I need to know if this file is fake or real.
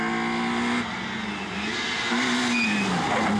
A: real